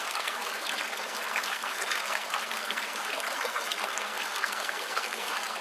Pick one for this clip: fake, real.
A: fake